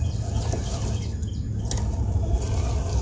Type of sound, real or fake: real